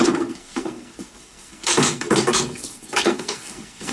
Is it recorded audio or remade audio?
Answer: remade